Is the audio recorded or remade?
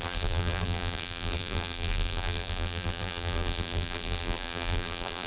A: remade